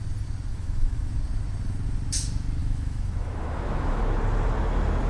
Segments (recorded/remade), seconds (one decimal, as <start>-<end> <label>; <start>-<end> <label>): 0.0-0.5 recorded; 0.5-1.1 remade; 1.1-2.6 recorded; 2.6-4.0 remade; 4.0-5.1 recorded